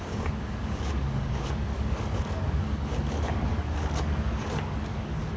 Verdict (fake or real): fake